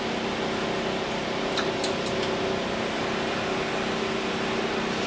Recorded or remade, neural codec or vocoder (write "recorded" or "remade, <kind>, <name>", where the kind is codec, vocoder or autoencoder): recorded